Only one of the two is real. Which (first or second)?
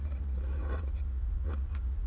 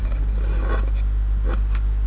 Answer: second